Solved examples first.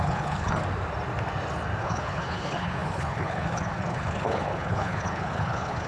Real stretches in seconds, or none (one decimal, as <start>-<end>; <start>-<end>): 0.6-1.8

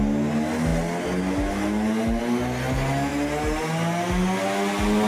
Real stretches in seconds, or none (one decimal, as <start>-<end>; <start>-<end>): 0.0-5.1

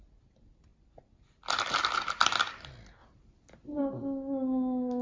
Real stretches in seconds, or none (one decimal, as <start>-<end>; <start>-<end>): 0.0-3.0; 3.8-5.0